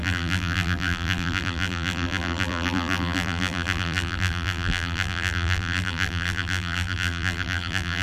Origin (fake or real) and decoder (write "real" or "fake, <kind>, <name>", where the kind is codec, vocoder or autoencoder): fake, vocoder, BigVGAN v2